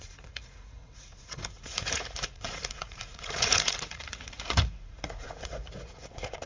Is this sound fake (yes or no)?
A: yes